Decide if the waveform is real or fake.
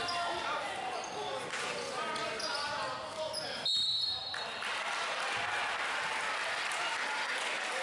real